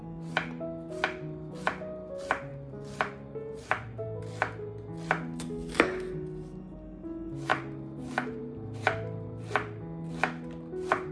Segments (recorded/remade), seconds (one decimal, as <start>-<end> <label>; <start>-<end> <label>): 0.0-2.5 recorded; 2.5-4.2 remade; 4.2-7.5 recorded; 7.5-9.8 remade; 9.8-11.1 recorded